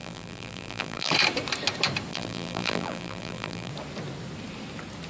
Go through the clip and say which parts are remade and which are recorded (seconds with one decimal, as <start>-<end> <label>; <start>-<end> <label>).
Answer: 0.0-1.1 remade; 1.1-2.1 recorded; 2.1-3.7 remade; 3.7-5.1 recorded